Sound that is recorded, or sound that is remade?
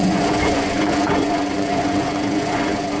remade